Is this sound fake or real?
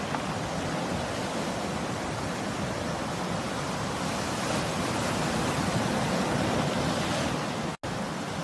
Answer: real